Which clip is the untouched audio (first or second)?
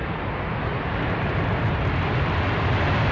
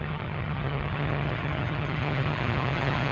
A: first